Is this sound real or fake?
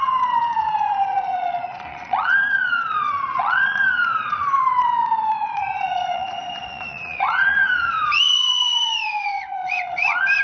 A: fake